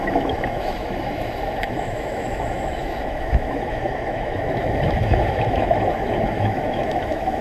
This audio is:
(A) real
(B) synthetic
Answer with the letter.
B